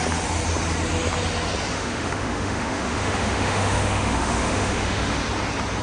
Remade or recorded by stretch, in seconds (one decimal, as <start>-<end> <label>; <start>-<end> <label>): 0.0-1.7 recorded; 1.7-5.2 remade; 5.2-5.8 recorded